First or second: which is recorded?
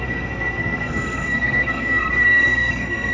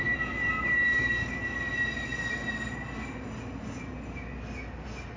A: second